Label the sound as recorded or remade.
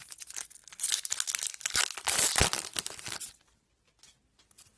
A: recorded